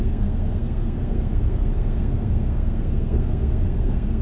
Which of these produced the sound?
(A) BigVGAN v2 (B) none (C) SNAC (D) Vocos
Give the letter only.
C